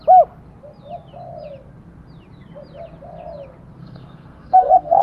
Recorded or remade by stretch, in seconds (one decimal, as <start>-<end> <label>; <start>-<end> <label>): 0.0-3.8 recorded; 3.8-5.0 remade